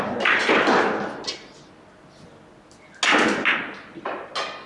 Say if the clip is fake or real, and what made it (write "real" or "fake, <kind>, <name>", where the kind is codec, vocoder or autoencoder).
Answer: real